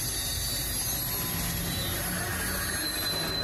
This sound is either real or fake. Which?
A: real